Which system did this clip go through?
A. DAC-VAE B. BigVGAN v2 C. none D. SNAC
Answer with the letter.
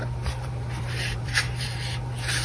B